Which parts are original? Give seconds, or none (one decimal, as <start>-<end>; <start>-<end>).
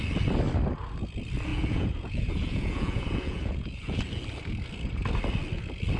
0.0-1.5; 4.0-6.0